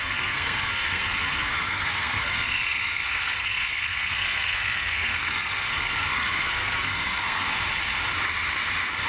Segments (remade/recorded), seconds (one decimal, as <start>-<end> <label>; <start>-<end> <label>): 0.0-7.5 remade; 7.5-9.1 recorded